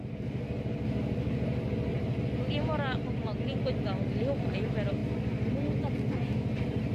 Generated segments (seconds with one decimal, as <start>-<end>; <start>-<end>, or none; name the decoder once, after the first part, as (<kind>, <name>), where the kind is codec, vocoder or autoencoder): none